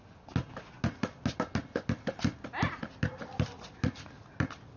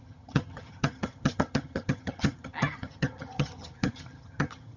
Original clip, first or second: first